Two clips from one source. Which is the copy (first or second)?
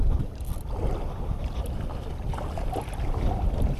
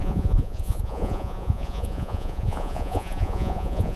second